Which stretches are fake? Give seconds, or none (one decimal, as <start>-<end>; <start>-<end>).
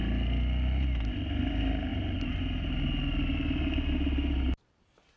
none